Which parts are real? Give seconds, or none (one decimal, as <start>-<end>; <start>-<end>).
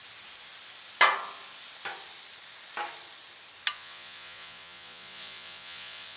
0.0-3.7